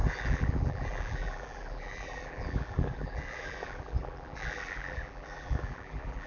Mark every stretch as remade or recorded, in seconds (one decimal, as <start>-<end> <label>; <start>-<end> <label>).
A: 0.0-6.3 remade